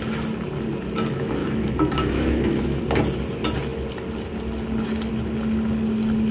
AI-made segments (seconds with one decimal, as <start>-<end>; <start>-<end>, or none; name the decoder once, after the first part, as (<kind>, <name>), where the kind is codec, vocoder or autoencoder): 1.4-2.8 (autoencoder, DAC-VAE)